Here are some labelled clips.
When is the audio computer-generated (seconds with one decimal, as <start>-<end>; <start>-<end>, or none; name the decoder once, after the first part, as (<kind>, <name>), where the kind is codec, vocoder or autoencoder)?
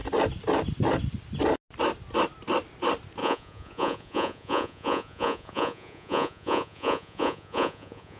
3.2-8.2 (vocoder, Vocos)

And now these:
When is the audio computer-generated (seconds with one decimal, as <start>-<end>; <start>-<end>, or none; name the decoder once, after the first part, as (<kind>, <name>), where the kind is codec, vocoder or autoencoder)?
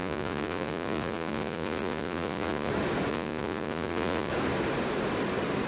0.0-2.7 (vocoder, Vocos); 3.1-4.3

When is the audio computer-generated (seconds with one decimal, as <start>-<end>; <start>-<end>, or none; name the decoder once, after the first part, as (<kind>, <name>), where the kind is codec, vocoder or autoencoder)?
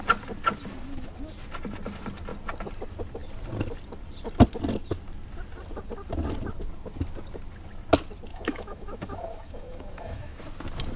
8.3-10.4 (autoencoder, DAC-VAE)